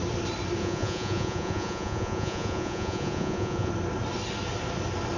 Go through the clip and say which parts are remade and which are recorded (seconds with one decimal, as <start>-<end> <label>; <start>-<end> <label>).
0.0-0.6 recorded; 0.6-3.7 remade; 3.7-5.2 recorded